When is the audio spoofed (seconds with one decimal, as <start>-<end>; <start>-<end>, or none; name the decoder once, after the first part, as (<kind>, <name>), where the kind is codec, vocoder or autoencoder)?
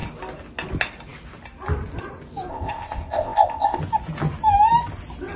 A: 2.5-3.8 (codec, ZipCodec)